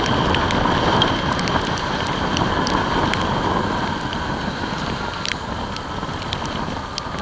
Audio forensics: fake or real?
real